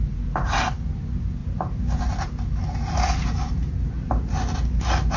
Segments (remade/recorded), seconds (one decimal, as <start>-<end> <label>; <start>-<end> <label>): 0.0-1.4 recorded; 1.4-3.9 remade; 3.9-5.2 recorded